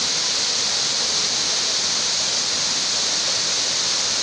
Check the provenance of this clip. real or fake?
real